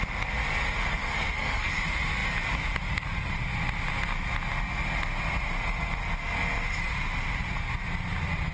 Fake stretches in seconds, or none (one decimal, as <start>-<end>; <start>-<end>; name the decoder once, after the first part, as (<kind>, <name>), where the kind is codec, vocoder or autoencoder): 0.8-1.7 (codec, SNAC)